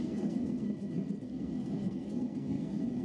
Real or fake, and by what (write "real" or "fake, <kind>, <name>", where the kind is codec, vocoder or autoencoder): fake, codec, SNAC